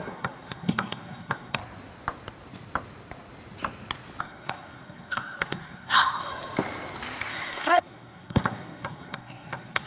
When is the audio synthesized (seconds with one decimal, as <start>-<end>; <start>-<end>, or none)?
0.0-1.6; 4.2-6.3; 7.3-9.9